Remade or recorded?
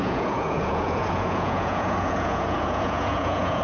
remade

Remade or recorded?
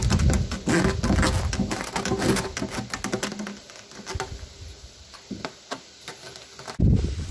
recorded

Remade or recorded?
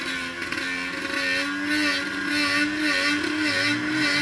recorded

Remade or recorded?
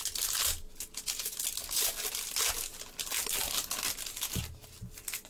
recorded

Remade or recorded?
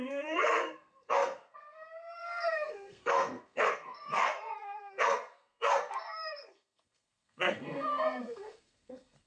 remade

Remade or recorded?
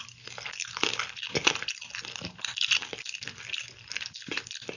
recorded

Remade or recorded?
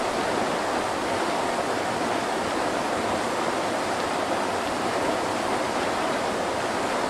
recorded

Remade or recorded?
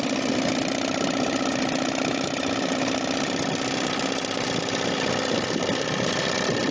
recorded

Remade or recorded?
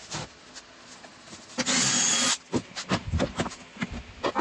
recorded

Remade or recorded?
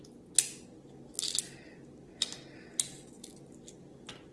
recorded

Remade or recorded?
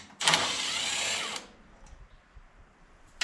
recorded